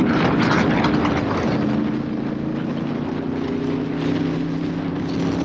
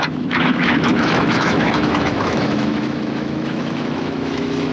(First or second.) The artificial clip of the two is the second